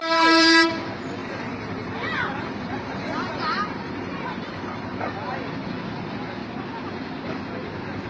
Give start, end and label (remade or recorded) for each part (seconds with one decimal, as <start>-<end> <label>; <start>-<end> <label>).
0.0-0.7 remade; 0.7-1.2 recorded; 1.2-5.0 remade; 5.0-8.1 recorded